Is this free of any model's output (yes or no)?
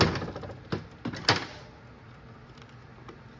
yes